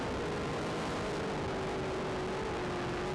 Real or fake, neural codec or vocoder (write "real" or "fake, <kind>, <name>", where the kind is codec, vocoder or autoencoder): real